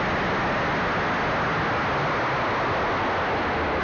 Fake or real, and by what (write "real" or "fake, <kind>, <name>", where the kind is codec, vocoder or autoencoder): real